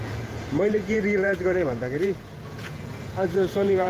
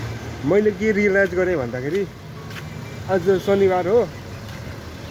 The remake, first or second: first